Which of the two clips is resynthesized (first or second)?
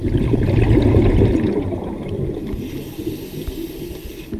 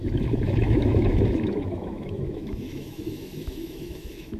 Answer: second